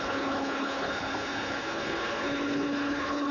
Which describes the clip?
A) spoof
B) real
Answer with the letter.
A